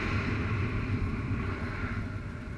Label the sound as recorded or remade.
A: recorded